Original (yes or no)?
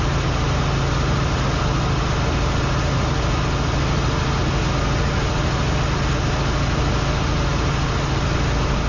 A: yes